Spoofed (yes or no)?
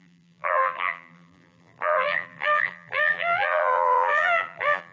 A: yes